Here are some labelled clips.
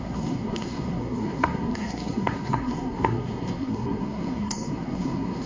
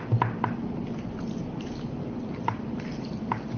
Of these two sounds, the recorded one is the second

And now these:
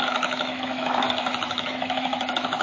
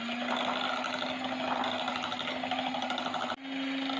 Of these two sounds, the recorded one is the second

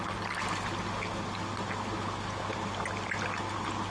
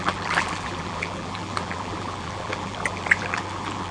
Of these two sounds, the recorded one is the first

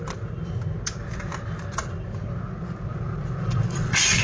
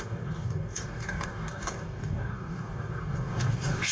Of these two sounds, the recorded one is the first